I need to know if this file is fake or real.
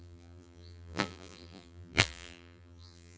fake